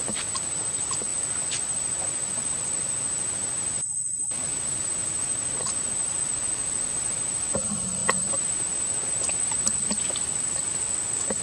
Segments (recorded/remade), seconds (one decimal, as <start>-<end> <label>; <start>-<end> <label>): 0.0-11.4 recorded